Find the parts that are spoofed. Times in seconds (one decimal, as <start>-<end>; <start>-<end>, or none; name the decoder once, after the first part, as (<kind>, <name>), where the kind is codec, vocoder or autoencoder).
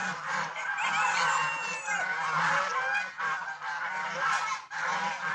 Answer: none